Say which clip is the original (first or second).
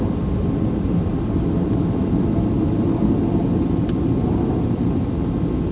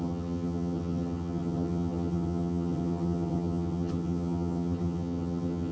first